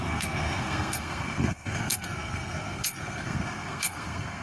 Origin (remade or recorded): remade